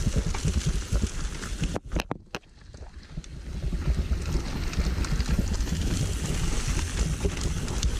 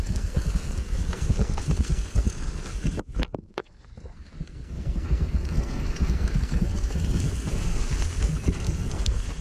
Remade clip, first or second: second